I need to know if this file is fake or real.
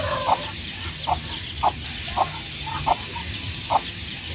real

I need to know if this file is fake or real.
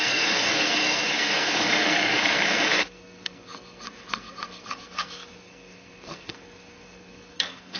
fake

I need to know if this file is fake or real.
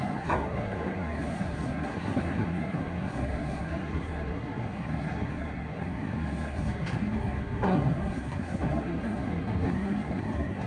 fake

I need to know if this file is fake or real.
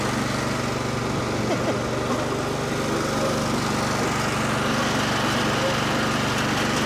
real